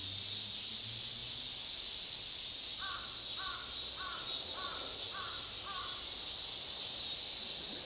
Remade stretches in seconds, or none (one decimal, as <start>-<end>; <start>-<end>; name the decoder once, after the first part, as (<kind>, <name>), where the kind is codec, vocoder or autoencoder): none